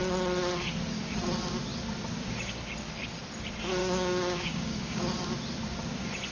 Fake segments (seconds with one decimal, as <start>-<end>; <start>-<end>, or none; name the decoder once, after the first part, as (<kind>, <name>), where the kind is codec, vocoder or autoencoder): 3.8-5.0 (codec, DAC)